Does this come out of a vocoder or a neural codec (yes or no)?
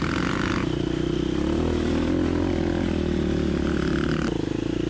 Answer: no